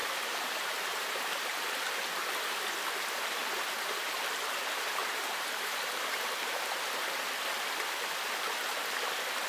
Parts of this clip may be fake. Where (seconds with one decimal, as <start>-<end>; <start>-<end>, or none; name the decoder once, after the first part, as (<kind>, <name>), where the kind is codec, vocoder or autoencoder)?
0.0-1.4 (vocoder, BigVGAN v2); 5.0-6.6